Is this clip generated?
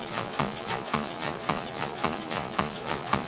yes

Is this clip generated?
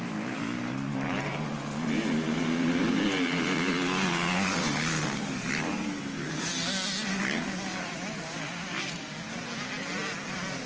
no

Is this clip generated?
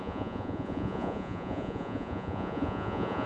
yes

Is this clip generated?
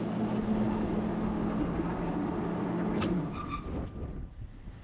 no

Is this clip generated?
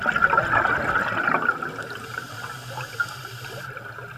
no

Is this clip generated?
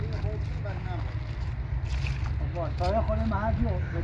no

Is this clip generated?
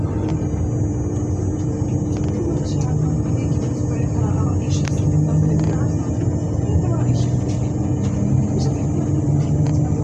no